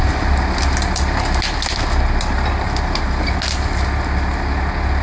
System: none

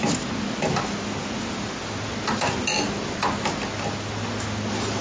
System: none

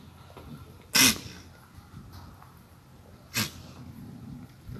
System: none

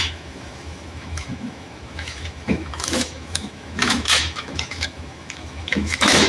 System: autoencoder, DAC-VAE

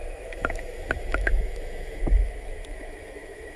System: autoencoder, DAC-VAE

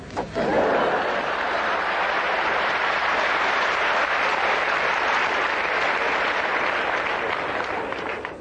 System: none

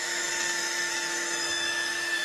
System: autoencoder, DAC-VAE